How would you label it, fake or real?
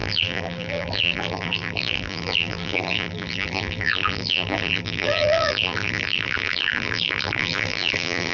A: fake